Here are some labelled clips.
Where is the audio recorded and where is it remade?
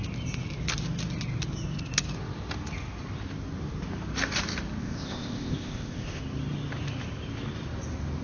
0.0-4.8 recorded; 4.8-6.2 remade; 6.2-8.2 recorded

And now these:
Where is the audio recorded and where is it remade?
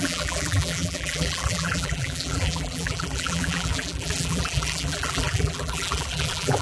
0.0-6.6 remade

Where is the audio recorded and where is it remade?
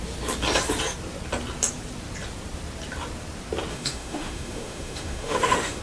0.0-3.7 recorded; 3.7-5.8 remade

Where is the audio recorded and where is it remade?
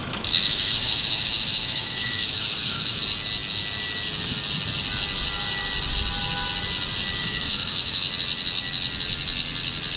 0.0-3.0 remade; 3.0-7.2 recorded; 7.2-8.1 remade; 8.1-10.0 recorded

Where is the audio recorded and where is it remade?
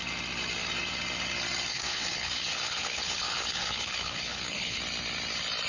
0.0-1.7 recorded; 1.7-4.8 remade; 4.8-5.7 recorded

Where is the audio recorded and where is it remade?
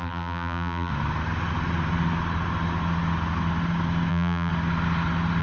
0.0-0.9 remade; 0.9-4.1 recorded; 4.1-4.5 remade; 4.5-5.4 recorded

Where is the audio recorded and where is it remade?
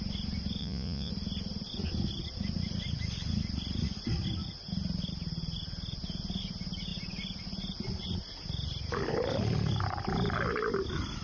0.0-0.6 recorded; 0.6-1.1 remade; 1.1-11.2 recorded